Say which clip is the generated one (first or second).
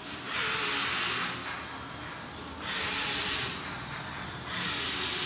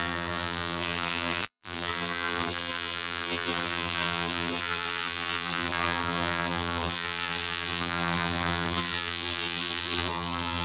second